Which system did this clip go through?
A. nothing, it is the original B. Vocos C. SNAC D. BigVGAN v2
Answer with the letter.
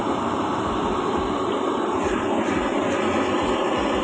A